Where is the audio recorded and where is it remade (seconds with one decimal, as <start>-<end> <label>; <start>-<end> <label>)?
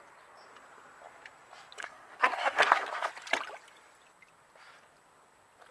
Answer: 0.0-1.8 recorded; 1.8-3.1 remade; 3.1-5.7 recorded